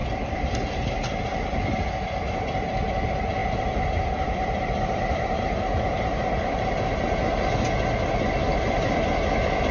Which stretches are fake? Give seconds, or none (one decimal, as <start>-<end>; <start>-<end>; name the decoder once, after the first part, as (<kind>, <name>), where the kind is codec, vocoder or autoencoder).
0.0-0.9 (vocoder, BigVGAN v2); 3.4-6.7; 8.5-9.7